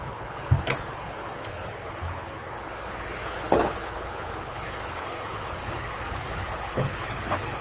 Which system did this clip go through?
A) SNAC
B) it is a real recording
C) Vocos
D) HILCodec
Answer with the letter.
D